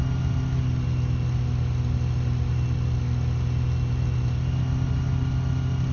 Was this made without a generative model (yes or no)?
yes